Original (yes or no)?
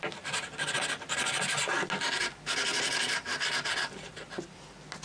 yes